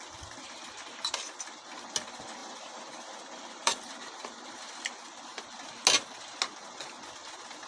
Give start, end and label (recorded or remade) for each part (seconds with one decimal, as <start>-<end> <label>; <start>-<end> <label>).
0.0-2.4 recorded; 2.4-4.6 remade; 4.6-7.7 recorded